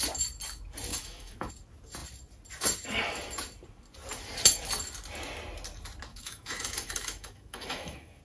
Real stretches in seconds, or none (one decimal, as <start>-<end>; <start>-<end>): 0.0-0.9; 1.5-6.1